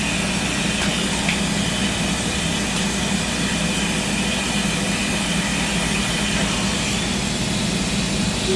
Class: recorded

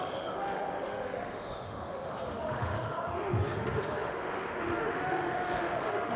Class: remade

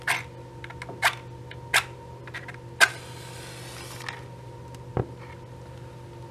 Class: recorded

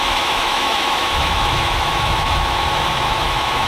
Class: remade